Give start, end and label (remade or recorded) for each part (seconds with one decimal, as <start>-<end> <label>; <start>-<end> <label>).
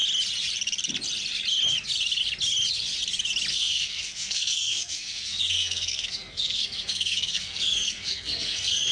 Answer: 0.0-3.5 recorded; 3.5-8.9 remade